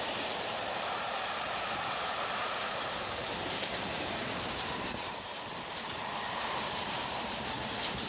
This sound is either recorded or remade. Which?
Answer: remade